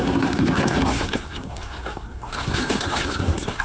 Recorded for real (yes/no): no